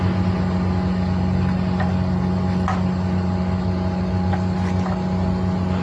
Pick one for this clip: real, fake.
real